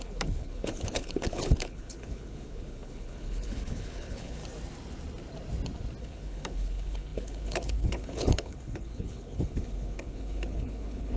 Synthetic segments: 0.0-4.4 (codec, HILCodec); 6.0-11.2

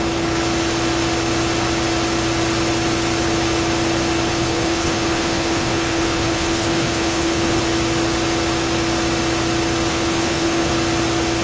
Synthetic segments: 4.3-7.6 (codec, HILCodec); 9.9-10.7